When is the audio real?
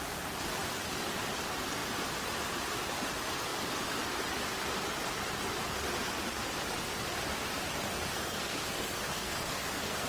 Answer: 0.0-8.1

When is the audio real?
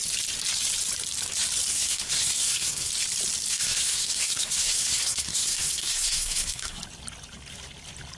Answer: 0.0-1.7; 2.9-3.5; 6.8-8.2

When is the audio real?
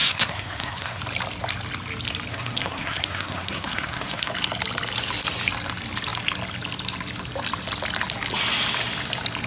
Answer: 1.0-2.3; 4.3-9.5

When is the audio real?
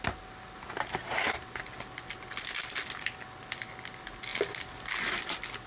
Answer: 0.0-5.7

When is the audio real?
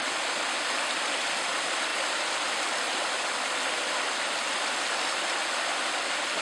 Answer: 0.0-6.4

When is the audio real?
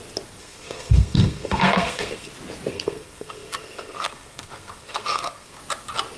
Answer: 0.0-0.4; 2.3-2.7; 5.6-6.2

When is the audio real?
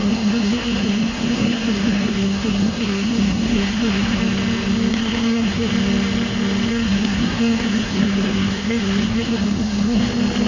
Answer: 4.2-4.9; 5.7-6.7; 10.0-10.5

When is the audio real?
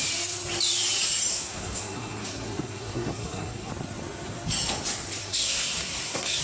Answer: 0.0-1.3; 3.7-5.2